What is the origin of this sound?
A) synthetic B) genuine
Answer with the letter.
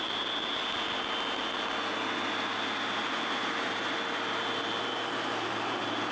B